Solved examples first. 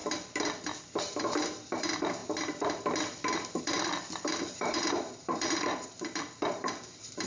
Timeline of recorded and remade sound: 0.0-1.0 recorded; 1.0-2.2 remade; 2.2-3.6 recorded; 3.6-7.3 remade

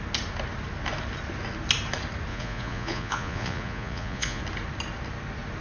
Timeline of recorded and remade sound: 0.0-2.3 recorded; 2.3-4.4 remade; 4.4-5.6 recorded

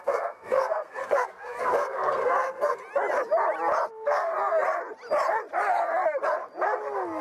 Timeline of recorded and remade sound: 0.0-2.8 remade; 2.8-3.9 recorded; 3.9-4.3 remade; 4.3-7.2 recorded

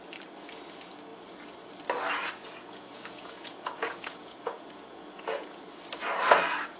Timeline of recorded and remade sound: 0.0-2.4 recorded; 2.4-5.6 remade; 5.6-6.8 recorded

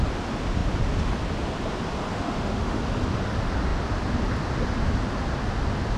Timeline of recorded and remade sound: 0.0-2.1 recorded; 2.1-2.8 remade; 2.8-6.0 recorded

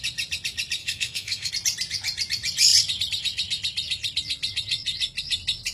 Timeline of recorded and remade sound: 0.0-0.8 recorded; 0.8-1.5 remade; 1.5-5.7 recorded

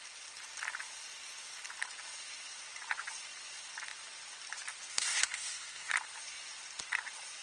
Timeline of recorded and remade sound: 0.0-4.9 recorded; 4.9-5.9 remade; 5.9-7.4 recorded